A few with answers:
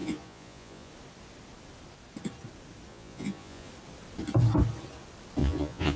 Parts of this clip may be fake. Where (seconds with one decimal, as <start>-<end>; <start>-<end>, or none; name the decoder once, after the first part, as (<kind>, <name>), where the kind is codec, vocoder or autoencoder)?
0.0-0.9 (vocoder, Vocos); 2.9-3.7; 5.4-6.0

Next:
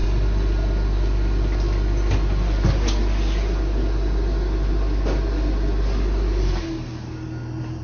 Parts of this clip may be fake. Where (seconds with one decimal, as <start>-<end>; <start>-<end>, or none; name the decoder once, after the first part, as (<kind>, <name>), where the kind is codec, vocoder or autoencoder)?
none

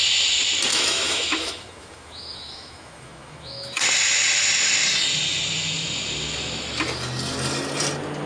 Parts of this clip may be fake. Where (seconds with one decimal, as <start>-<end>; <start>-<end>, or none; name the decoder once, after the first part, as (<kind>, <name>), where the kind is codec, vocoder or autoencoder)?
0.7-3.8 (autoencoder, DAC-VAE)